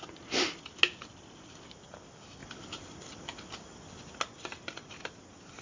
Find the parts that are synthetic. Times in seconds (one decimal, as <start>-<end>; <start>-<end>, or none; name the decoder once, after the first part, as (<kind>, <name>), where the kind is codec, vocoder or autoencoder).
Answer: none